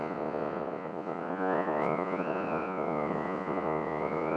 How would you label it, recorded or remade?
remade